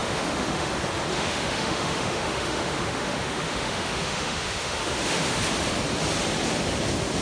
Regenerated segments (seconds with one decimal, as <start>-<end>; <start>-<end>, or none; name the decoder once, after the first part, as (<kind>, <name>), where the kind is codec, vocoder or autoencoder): 0.0-0.7 (autoencoder, DAC-VAE); 1.1-5.4